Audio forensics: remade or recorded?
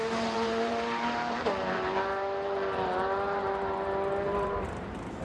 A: remade